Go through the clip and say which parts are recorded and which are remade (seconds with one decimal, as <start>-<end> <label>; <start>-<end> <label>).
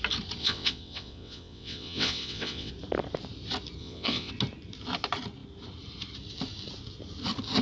0.0-0.4 recorded; 0.4-2.7 remade; 2.7-3.8 recorded; 3.8-4.3 remade; 4.3-7.6 recorded